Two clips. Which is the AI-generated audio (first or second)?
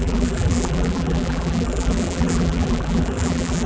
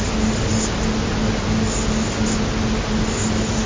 first